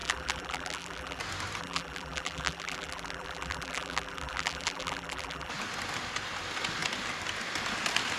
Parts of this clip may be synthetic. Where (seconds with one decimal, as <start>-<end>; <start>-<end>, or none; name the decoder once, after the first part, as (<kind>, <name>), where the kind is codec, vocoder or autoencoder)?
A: 0.0-1.2 (vocoder, BigVGAN v2); 1.6-5.5